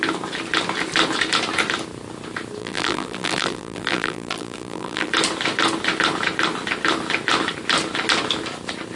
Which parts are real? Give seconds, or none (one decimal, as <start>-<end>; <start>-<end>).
0.0-2.6; 5.1-8.9